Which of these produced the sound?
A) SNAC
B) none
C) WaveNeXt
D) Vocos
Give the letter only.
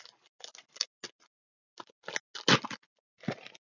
B